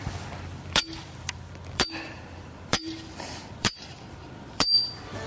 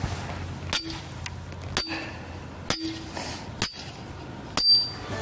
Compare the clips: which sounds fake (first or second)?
first